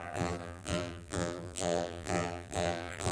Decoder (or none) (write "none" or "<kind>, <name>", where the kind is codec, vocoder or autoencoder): vocoder, BigVGAN v2